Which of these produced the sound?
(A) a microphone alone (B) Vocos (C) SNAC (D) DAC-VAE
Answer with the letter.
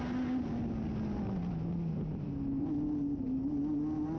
A